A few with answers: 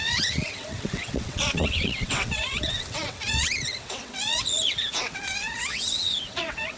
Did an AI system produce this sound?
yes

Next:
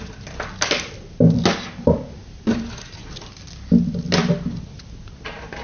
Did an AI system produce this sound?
no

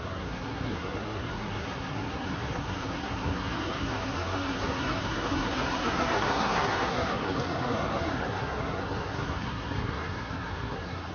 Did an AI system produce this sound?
yes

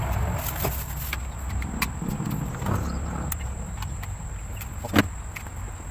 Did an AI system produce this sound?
no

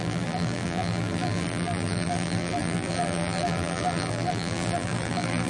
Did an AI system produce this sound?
yes